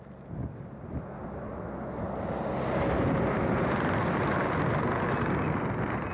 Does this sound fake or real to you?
real